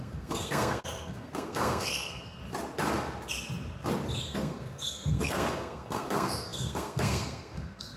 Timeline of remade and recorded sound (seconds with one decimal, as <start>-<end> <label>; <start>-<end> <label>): 0.0-2.4 remade; 2.4-4.2 recorded; 4.2-8.0 remade